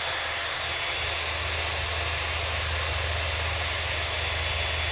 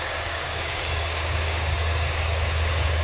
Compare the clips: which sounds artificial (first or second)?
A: second